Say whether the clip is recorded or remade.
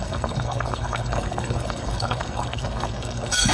remade